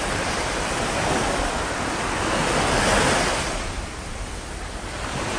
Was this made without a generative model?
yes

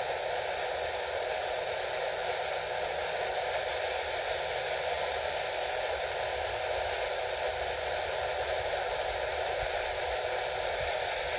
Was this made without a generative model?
yes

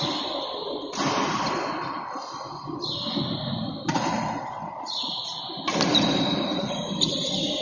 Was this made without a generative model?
yes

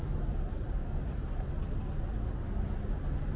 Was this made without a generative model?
yes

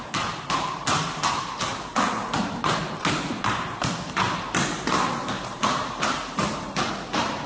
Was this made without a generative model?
no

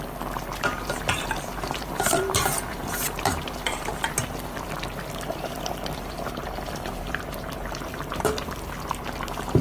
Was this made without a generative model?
no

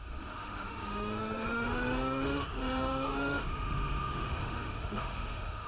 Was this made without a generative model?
no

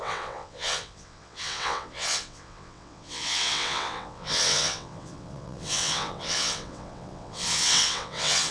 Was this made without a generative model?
no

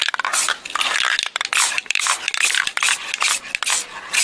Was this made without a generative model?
yes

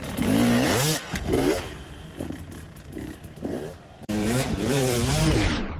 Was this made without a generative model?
no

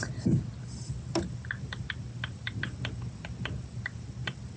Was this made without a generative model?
yes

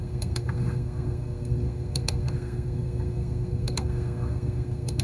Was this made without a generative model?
no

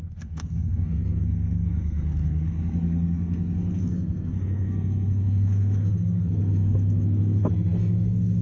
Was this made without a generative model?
no